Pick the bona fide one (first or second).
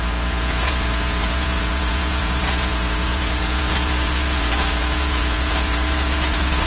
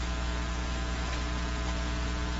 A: second